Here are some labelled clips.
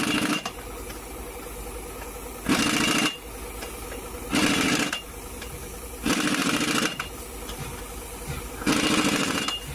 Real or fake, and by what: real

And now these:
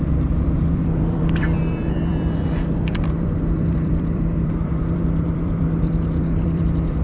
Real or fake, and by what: fake, vocoder, BigVGAN v2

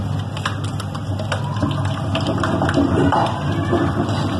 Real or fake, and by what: real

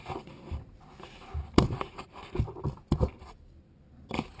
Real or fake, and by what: fake, vocoder, BigVGAN v2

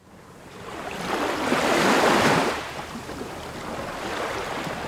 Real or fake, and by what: fake, vocoder, BigVGAN v2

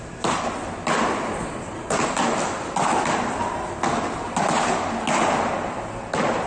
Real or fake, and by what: real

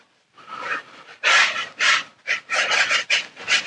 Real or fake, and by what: fake, vocoder, BigVGAN v2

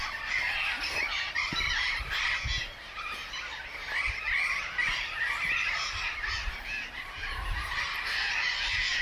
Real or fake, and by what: fake, vocoder, BigVGAN v2